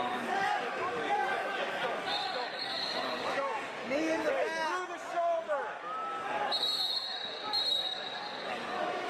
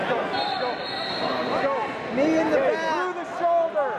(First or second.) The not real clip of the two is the first